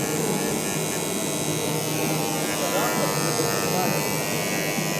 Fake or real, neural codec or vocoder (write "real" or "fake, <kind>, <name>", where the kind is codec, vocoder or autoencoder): real